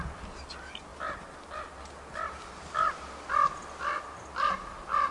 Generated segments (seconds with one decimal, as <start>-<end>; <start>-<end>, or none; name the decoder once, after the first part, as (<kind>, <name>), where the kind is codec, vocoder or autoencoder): none